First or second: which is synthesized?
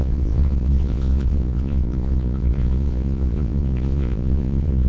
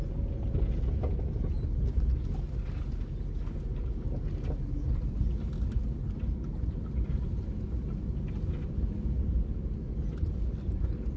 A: first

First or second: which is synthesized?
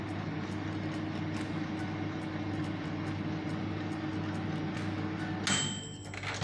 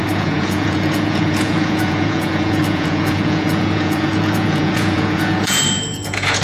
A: second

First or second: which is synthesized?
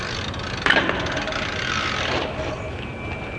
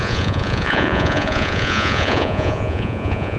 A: second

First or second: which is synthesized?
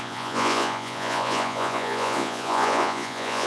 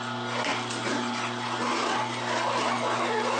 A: first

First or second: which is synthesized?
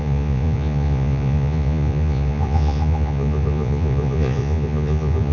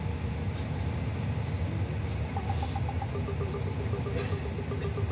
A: first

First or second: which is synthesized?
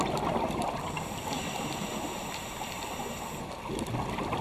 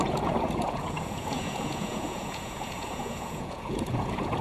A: second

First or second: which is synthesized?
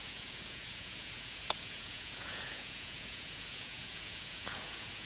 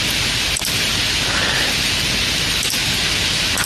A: first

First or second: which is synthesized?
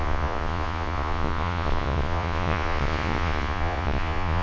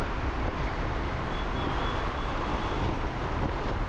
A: first